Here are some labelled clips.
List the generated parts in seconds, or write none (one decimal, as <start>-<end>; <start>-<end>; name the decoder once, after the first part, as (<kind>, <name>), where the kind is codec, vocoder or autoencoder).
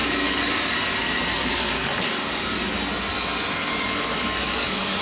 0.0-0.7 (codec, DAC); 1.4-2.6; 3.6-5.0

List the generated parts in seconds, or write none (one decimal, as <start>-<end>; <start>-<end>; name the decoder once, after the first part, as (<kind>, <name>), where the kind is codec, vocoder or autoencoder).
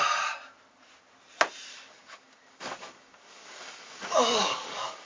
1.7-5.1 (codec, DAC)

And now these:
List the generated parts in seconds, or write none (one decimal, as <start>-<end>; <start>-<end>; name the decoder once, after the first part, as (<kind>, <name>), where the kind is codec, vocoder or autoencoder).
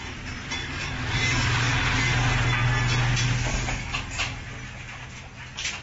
0.6-2.0 (codec, DAC); 3.5-4.2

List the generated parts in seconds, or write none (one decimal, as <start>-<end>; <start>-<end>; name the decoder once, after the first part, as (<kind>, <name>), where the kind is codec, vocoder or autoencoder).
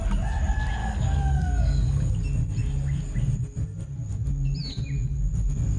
0.8-2.1 (codec, DAC)